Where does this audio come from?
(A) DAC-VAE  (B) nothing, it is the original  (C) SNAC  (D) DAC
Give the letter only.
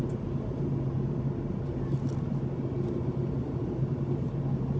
B